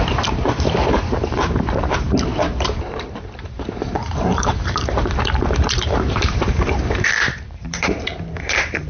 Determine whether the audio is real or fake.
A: fake